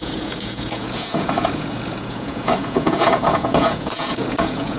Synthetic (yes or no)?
yes